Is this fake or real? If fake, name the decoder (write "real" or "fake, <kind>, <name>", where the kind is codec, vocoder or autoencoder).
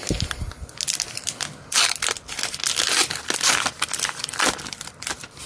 real